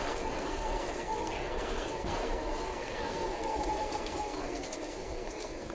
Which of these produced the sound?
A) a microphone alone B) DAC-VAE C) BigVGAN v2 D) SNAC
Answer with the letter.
D